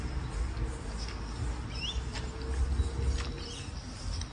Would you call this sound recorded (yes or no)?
yes